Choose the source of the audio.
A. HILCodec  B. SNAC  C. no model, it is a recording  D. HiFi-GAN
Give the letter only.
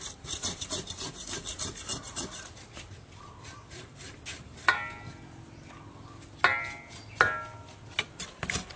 C